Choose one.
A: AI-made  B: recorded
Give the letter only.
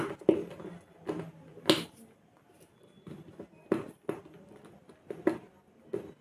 B